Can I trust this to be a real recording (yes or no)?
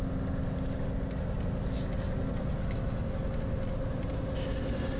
yes